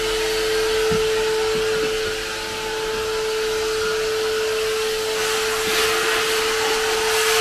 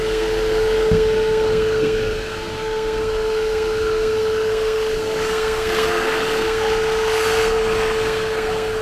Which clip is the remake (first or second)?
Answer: second